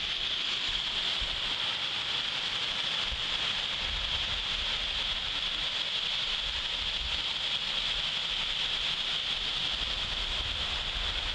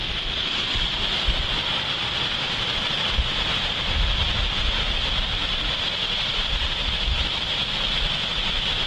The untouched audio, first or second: first